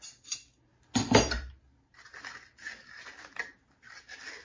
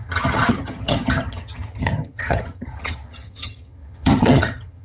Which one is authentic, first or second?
first